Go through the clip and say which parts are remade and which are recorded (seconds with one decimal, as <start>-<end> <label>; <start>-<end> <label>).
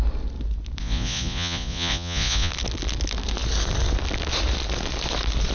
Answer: 0.0-0.8 recorded; 0.8-2.5 remade; 2.5-5.5 recorded